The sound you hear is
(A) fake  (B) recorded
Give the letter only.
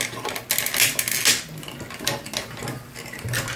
B